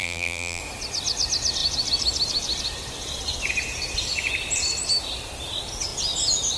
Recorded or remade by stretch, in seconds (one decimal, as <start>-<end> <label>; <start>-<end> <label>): 0.0-0.6 remade; 0.6-6.6 recorded